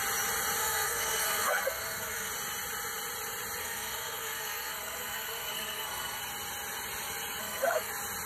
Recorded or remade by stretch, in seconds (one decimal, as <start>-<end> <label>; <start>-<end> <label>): 0.0-0.6 recorded; 0.6-2.3 remade; 2.3-3.6 recorded; 3.6-6.2 remade; 6.2-7.4 recorded; 7.4-7.9 remade; 7.9-8.3 recorded